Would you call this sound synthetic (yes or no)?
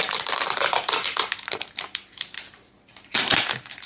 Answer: yes